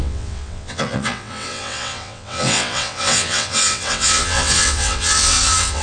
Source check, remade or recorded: remade